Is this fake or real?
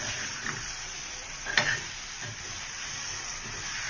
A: real